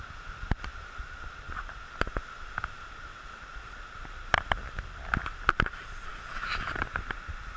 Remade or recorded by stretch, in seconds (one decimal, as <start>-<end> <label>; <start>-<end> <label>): 0.0-7.6 recorded

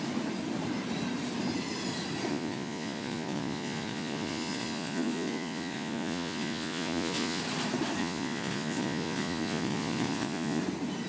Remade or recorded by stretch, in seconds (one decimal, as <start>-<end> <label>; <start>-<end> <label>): 0.0-2.3 recorded; 2.3-7.4 remade; 7.4-8.0 recorded; 8.0-10.6 remade; 10.6-11.1 recorded

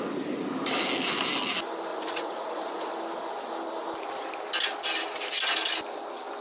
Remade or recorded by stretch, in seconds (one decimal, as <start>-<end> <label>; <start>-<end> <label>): 0.0-1.9 recorded; 1.9-2.9 remade; 2.9-6.4 recorded